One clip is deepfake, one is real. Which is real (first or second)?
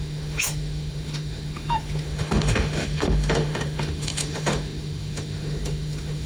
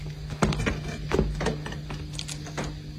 second